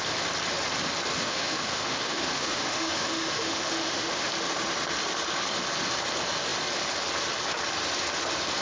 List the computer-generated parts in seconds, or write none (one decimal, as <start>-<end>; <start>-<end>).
1.2-4.3